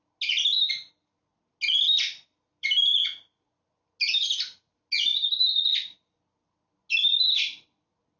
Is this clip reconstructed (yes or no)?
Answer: no